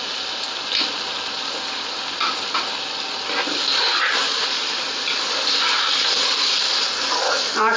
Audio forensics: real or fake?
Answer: real